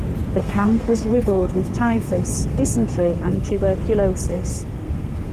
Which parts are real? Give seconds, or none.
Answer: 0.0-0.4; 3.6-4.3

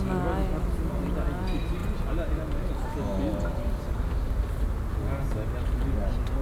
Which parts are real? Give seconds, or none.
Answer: 0.0-6.4

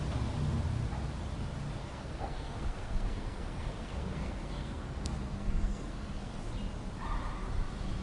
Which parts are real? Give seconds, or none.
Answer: 0.0-1.8; 6.5-8.0

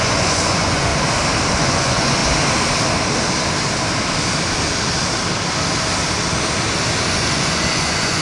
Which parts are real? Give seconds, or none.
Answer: 0.9-1.5; 2.2-7.1

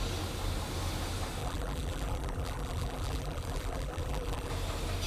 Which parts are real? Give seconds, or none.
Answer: 0.0-1.4; 4.5-5.1

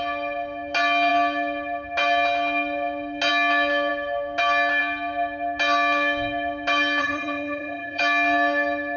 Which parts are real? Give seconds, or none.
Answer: 0.0-7.0; 8.0-9.0